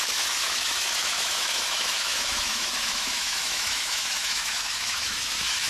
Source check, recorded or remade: remade